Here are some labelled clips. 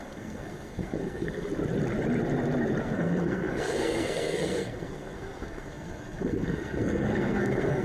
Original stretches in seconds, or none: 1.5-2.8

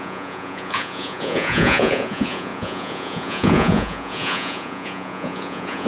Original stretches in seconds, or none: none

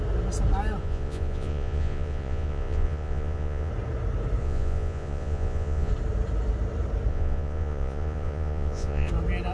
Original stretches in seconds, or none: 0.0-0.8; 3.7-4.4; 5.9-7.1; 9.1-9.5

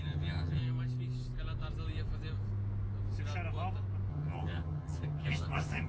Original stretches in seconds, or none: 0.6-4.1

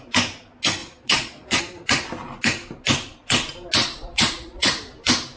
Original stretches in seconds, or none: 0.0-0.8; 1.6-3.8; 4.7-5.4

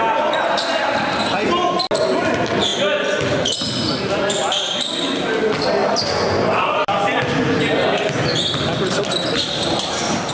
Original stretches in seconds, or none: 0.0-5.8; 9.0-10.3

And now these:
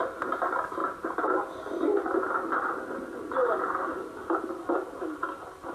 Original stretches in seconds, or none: 0.0-5.7

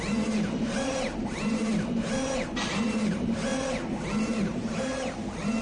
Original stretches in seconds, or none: 1.7-2.6; 3.5-4.2